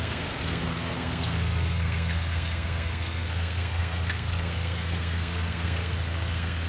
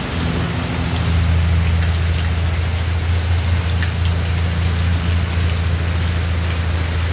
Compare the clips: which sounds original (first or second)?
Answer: second